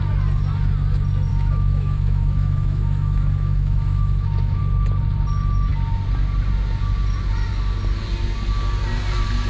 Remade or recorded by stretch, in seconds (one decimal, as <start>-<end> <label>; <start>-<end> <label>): 0.0-1.3 recorded; 1.3-4.6 remade; 4.6-9.5 recorded